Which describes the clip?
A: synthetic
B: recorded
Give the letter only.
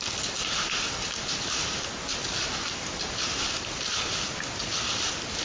B